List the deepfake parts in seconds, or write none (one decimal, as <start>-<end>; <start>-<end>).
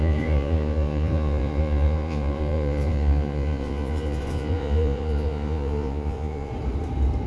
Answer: 0.0-6.5